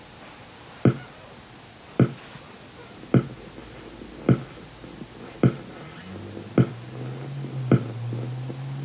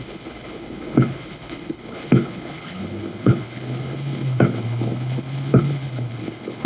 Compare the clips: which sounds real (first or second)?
first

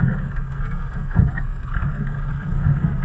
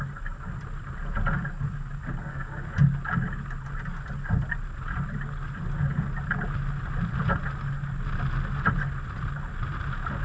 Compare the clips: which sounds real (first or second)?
second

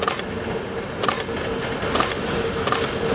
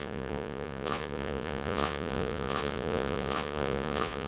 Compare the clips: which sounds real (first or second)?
first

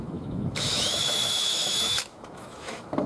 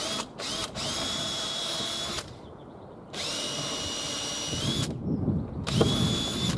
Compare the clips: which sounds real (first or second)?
second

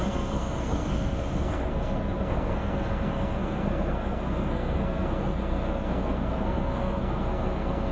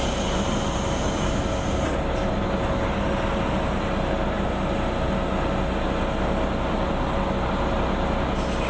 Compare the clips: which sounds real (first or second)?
second